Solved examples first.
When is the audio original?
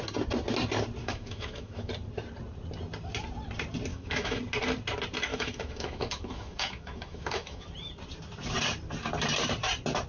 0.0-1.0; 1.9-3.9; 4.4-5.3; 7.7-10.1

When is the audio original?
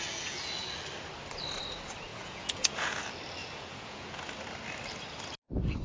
0.0-2.1; 3.0-3.4; 4.1-5.8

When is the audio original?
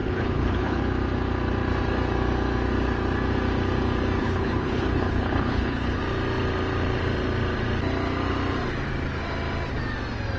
0.8-4.2; 6.0-10.4